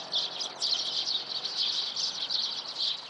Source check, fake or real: real